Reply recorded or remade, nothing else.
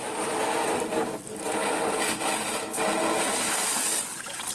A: recorded